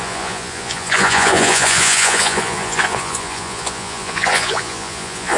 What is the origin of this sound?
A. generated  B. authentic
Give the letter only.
A